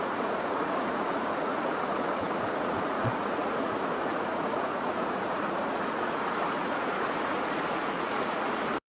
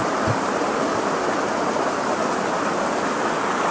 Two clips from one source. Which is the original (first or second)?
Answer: second